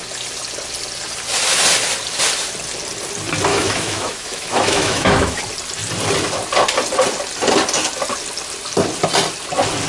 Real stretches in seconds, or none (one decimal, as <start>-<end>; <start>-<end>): 0.0-3.5; 5.4-9.9